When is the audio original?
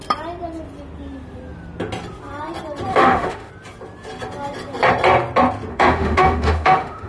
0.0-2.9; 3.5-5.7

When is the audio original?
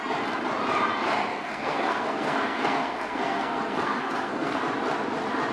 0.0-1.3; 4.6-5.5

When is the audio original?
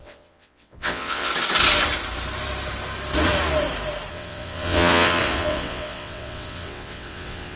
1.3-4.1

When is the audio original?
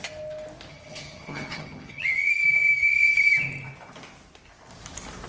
0.0-0.7; 2.3-5.3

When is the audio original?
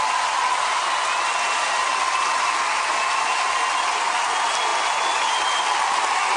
0.0-6.4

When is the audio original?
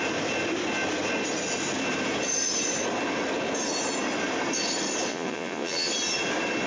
0.0-5.1; 5.9-6.7